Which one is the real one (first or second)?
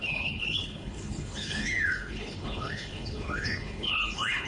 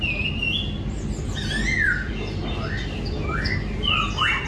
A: second